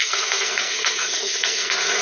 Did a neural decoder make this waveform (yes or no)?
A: yes